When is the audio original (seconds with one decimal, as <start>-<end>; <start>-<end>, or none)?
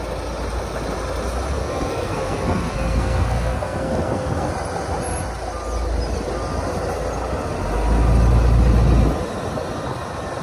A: 0.0-1.6; 4.5-10.4